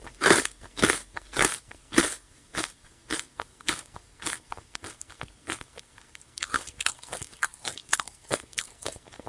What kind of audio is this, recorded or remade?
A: remade